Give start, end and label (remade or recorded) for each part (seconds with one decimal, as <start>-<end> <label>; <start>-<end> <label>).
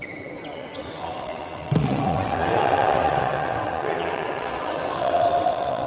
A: 0.0-5.9 remade